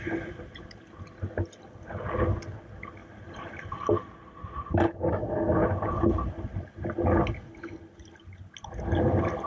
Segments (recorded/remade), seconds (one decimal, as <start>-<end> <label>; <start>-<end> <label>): 0.0-3.0 recorded; 3.0-5.1 remade; 5.1-5.6 recorded; 5.6-6.3 remade; 6.3-9.5 recorded